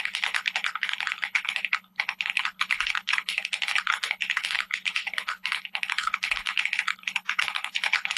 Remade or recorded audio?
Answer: remade